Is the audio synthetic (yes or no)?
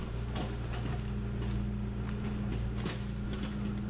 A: no